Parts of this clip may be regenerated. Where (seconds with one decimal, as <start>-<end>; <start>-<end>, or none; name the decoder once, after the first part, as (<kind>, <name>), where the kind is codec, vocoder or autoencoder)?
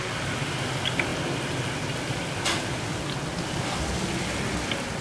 none